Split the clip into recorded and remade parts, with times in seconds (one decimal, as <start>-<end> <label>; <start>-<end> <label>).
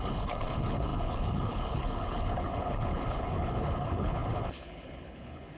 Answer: 0.0-5.6 remade